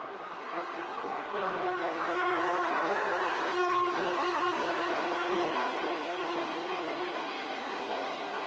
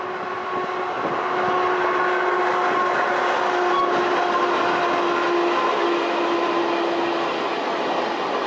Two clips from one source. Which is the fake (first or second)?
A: first